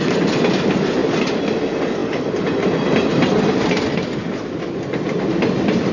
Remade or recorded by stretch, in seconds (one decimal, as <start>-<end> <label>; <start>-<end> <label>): 0.0-5.9 recorded